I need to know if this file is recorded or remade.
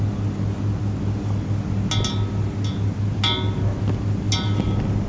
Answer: recorded